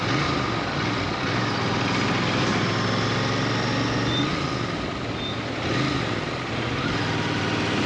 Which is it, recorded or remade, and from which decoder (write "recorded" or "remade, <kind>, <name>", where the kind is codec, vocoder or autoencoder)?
recorded